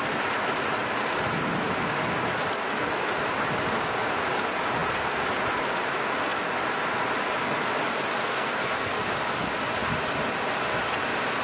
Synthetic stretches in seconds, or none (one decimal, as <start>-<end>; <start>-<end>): 8.3-9.0

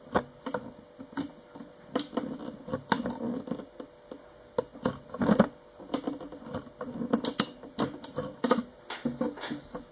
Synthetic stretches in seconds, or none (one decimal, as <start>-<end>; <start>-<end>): none

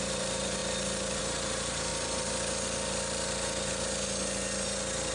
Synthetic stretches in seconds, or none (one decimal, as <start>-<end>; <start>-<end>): 0.0-0.6; 1.2-1.9

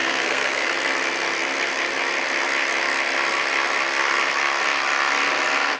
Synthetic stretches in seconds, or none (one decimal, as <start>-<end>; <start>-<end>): 0.0-0.7

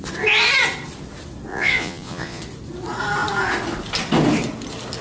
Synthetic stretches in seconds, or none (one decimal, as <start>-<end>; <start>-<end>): 1.5-2.4